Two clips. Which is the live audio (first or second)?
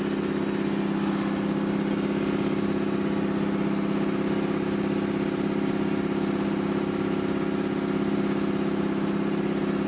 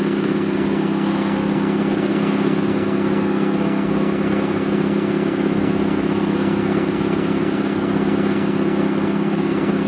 first